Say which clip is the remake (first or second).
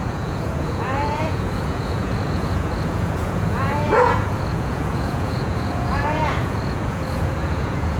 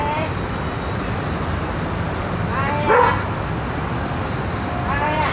first